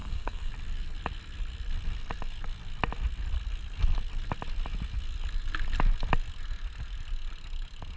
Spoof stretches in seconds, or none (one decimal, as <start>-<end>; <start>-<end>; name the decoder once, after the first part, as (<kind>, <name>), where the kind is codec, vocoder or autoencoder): 0.0-0.5 (codec, SNAC)